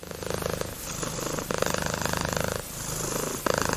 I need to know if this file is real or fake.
real